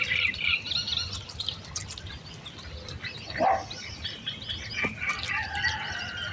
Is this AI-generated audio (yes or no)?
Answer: no